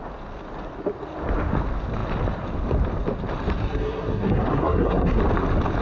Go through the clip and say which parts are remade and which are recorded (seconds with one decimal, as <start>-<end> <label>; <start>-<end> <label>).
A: 0.0-3.6 recorded; 3.6-5.2 remade; 5.2-5.8 recorded